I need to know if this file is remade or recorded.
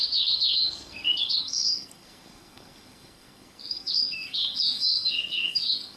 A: remade